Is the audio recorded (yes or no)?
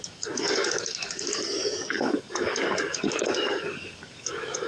no